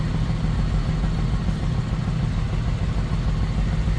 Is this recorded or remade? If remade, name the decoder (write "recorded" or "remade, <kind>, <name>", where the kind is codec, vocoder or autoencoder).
recorded